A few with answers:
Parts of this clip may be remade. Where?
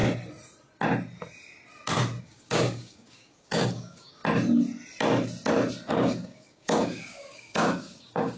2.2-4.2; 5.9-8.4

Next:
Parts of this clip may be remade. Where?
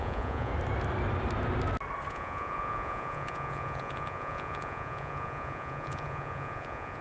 0.0-0.5; 2.1-7.0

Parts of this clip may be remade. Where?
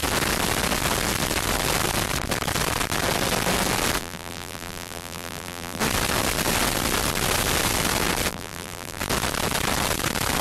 4.0-5.8; 8.3-9.0